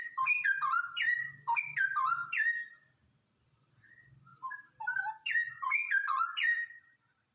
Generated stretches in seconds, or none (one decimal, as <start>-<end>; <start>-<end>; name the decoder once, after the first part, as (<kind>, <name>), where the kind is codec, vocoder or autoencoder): none